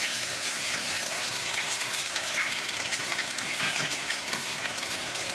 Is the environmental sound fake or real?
fake